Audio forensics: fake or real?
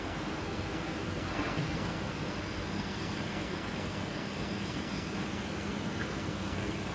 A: fake